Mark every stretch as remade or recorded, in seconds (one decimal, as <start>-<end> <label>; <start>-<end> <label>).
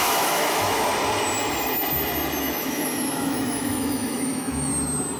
0.0-0.9 remade; 0.9-2.4 recorded; 2.4-4.7 remade; 4.7-5.2 recorded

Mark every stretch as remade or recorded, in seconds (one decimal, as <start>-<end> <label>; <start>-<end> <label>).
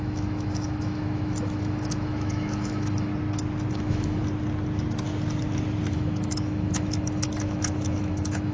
0.0-3.1 remade; 3.1-3.7 recorded; 3.7-4.2 remade; 4.2-5.9 recorded; 5.9-8.5 remade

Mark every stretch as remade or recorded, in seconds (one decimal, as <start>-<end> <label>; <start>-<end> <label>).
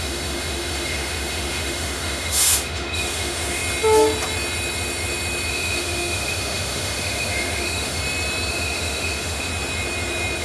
0.0-3.6 remade; 3.6-5.5 recorded; 5.5-8.0 remade; 8.0-8.5 recorded; 8.5-9.5 remade; 9.5-10.4 recorded